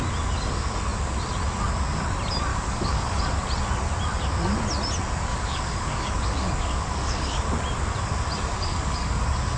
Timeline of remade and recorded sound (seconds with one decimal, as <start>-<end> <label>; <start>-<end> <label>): 0.0-2.5 recorded; 2.5-3.2 remade; 3.2-5.3 recorded; 5.3-7.4 remade; 7.4-8.5 recorded; 8.5-9.2 remade; 9.2-9.6 recorded